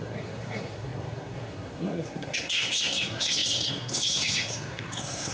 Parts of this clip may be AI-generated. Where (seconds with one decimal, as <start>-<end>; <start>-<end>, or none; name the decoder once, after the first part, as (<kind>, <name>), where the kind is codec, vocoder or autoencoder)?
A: 0.0-5.3 (codec, SNAC)